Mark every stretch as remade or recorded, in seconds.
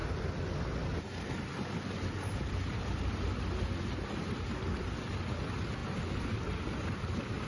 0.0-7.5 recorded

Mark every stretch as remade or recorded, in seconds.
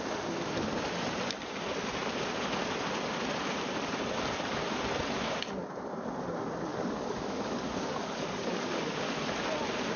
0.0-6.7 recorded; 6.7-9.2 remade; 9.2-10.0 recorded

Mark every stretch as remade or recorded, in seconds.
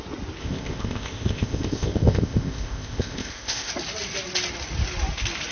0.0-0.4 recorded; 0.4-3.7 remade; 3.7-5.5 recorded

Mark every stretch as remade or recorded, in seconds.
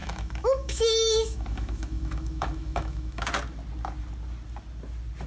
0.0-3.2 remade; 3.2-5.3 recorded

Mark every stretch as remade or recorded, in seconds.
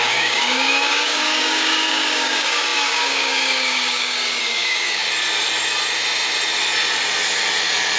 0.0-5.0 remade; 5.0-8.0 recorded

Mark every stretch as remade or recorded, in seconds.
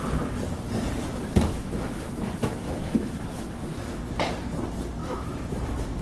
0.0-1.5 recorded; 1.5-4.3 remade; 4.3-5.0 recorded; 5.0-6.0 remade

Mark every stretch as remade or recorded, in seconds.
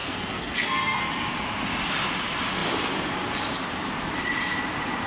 0.0-1.0 remade; 1.0-5.1 recorded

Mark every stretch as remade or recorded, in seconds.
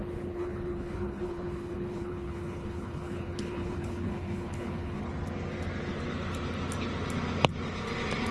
0.0-5.0 remade; 5.0-8.3 recorded